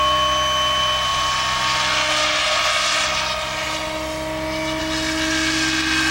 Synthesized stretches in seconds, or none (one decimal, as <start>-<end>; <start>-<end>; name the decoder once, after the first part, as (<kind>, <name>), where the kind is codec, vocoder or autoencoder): none